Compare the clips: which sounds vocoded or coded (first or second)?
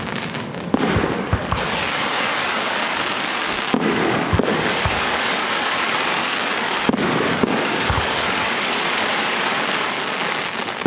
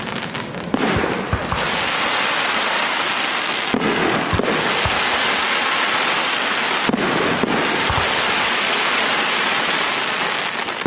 first